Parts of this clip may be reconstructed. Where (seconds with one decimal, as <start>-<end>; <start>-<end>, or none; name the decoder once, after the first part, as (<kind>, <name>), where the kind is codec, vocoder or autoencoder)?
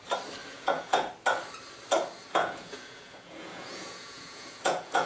0.4-1.1 (vocoder, Vocos); 2.3-5.1